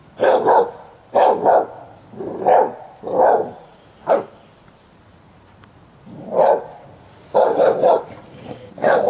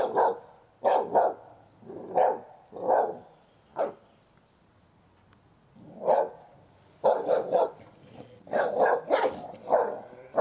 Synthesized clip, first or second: first